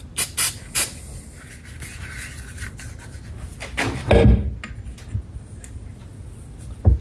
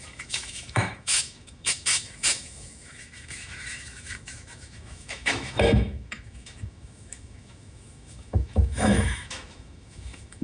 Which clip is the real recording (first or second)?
first